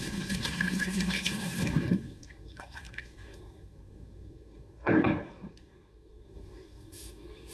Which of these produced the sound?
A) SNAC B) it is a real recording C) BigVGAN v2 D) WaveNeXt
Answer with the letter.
A